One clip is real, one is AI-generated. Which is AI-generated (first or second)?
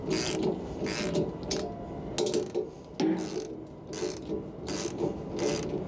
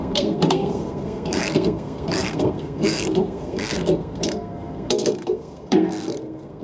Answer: second